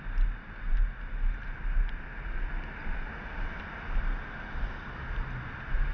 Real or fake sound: real